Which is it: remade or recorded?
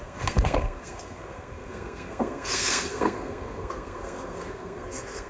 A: remade